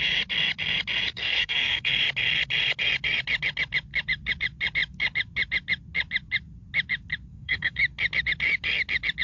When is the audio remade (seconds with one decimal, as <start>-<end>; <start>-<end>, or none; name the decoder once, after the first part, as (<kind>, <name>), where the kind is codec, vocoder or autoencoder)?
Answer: 1.1-1.9 (codec, SNAC); 7.3-7.8